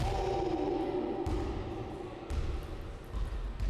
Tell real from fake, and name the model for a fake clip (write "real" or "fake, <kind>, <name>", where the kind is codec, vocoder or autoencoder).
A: real